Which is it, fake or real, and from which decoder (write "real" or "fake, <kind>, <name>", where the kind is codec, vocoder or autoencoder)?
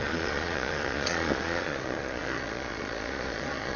fake, vocoder, Vocos